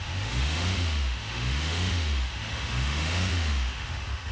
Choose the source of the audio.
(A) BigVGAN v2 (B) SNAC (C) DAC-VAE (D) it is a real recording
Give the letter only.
C